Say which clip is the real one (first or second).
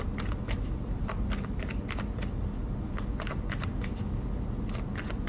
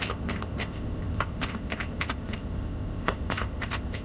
first